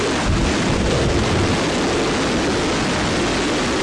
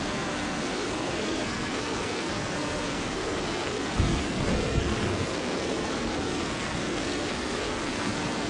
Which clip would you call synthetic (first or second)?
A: second